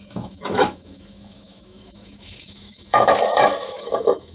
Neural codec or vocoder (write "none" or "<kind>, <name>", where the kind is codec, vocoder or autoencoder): autoencoder, DAC-VAE